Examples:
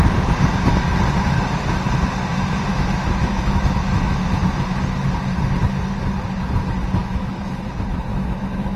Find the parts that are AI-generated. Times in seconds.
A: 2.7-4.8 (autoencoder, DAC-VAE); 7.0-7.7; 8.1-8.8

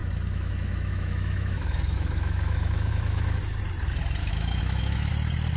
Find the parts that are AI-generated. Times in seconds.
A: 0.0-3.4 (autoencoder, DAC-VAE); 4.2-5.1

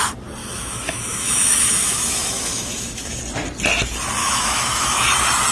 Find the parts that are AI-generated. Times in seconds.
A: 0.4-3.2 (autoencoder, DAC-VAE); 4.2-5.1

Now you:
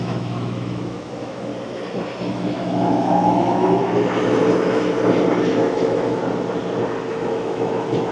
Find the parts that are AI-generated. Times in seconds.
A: 0.0-1.5 (autoencoder, DAC-VAE); 2.3-3.8; 5.6-6.2; 7.1-8.1